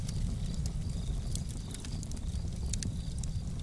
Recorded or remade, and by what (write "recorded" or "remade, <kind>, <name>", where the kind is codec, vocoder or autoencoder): recorded